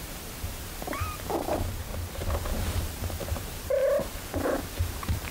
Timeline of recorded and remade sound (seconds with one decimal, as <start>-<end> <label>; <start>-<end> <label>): 0.0-1.9 remade; 1.9-3.0 recorded; 3.0-3.8 remade; 3.8-4.7 recorded; 4.7-5.3 remade